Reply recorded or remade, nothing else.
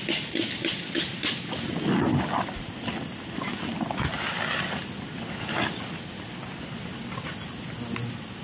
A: recorded